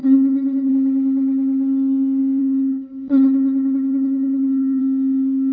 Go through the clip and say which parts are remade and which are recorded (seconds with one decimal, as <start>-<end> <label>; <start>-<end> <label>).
0.0-0.7 remade; 0.7-2.4 recorded; 2.4-4.8 remade; 4.8-5.5 recorded